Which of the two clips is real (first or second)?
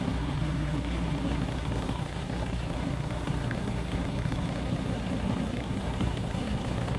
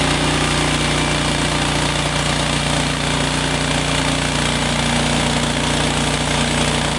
second